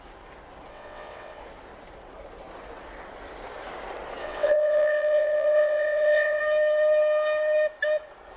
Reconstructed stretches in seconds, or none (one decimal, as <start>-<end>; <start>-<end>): 0.7-1.4; 4.2-6.4